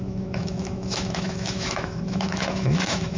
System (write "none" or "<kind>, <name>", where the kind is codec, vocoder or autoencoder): autoencoder, DAC-VAE